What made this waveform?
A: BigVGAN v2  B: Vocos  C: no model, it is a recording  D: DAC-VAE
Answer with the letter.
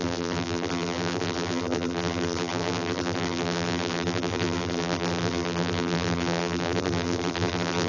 A